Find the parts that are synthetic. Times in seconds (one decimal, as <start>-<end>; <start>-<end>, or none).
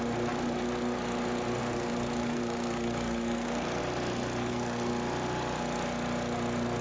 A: 1.6-3.8; 4.4-4.9